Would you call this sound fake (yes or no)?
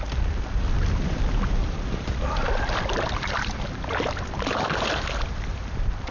yes